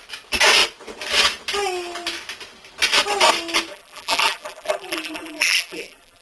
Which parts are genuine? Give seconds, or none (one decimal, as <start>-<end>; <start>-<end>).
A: 0.0-3.7